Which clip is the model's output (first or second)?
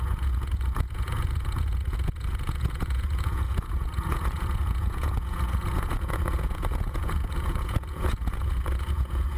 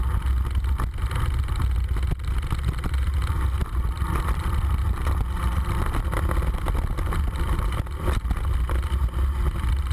first